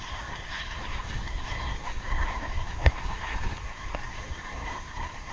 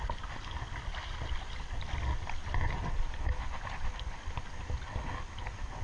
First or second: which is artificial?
first